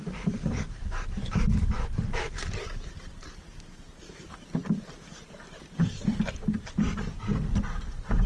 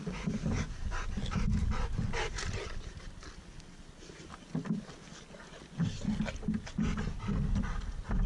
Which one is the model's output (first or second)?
first